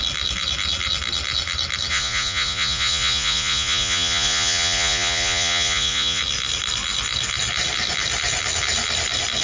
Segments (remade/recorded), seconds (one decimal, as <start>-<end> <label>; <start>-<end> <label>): 0.0-1.9 recorded; 1.9-6.2 remade; 6.2-9.4 recorded